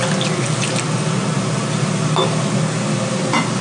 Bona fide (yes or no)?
yes